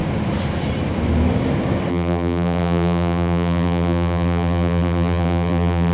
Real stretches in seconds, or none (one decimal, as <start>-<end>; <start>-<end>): 0.0-1.9